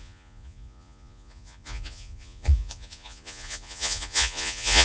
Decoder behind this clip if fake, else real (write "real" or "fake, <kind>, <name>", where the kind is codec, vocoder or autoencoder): fake, vocoder, Vocos